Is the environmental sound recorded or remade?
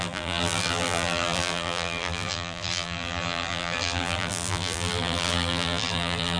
remade